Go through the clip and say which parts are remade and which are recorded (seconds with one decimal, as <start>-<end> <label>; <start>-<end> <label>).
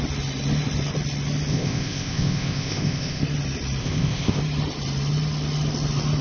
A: 0.0-1.5 recorded; 1.5-3.2 remade; 3.2-3.8 recorded; 3.8-4.4 remade; 4.4-6.2 recorded